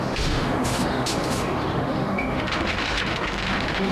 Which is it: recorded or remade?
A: remade